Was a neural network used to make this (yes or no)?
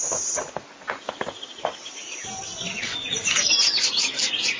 no